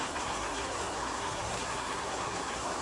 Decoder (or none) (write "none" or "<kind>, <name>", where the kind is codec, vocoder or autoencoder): codec, SNAC